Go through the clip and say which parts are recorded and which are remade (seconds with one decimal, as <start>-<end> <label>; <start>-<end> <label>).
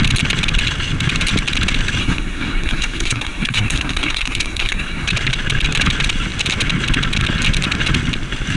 0.0-2.0 recorded; 2.0-5.1 remade; 5.1-8.6 recorded